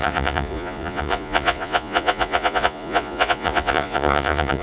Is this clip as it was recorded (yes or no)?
no